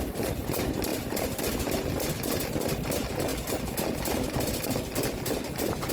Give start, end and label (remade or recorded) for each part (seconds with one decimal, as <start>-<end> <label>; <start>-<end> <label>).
0.0-0.9 recorded; 0.9-1.4 remade; 1.4-5.9 recorded